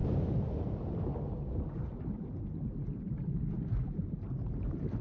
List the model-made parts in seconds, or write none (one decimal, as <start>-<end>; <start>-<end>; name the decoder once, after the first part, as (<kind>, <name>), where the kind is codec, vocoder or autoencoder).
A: none